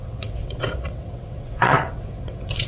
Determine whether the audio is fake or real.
fake